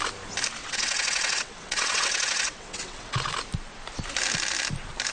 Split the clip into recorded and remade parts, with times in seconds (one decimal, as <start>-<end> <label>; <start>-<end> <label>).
0.0-0.6 recorded; 0.6-3.3 remade; 3.3-5.1 recorded